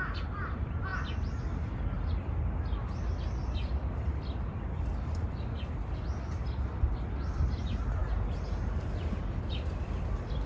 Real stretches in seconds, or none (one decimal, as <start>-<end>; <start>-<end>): 0.0-10.5